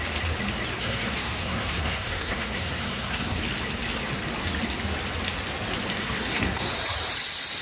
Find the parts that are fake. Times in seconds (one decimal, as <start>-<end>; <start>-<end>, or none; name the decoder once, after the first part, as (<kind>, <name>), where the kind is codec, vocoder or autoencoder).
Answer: 0.8-3.4 (codec, SNAC); 6.0-6.7